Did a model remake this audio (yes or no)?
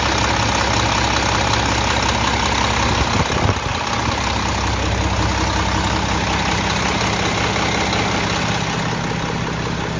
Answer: no